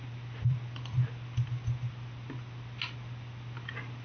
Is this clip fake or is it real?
real